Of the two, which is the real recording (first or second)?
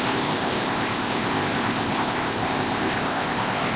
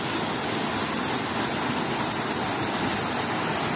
second